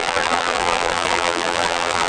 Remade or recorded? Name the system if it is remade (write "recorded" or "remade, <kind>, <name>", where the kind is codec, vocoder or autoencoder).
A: remade, vocoder, BigVGAN v2